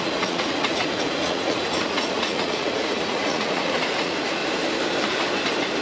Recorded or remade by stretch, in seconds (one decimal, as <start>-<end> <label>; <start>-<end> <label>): 0.0-4.4 remade; 4.4-5.8 recorded